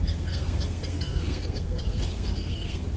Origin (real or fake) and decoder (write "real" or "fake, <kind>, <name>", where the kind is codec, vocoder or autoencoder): fake, codec, SNAC